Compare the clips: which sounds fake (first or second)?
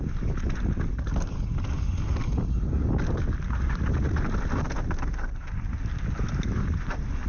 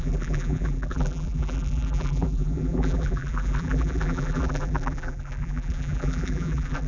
second